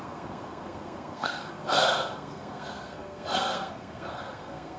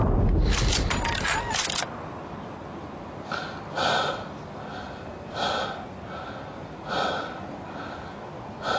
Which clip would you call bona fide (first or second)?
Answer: second